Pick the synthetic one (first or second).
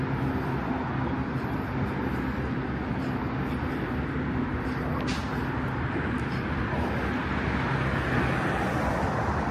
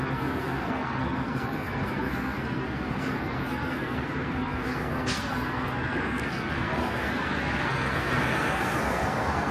second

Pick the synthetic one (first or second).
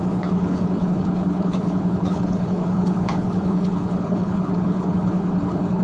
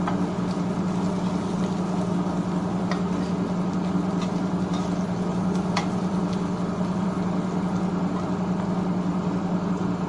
first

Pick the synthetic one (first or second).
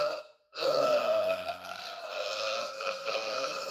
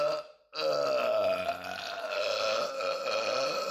first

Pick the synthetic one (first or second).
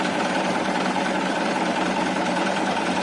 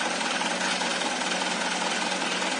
first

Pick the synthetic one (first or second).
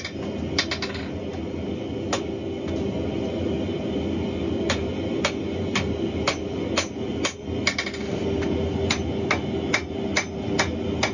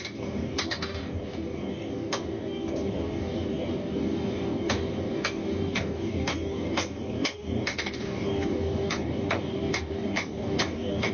second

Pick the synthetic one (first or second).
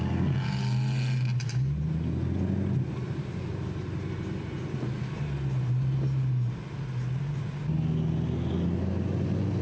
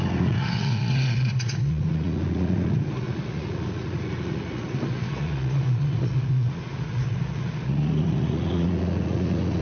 second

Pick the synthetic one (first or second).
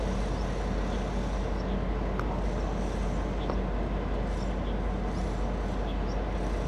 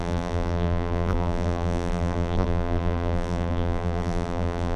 second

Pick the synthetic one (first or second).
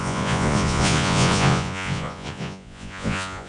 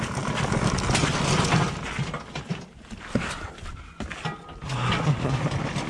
first